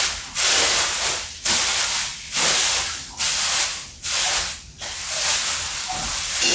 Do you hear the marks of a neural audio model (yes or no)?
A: yes